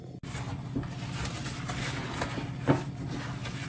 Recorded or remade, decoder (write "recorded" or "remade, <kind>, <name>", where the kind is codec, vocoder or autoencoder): recorded